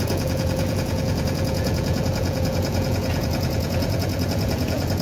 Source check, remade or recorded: remade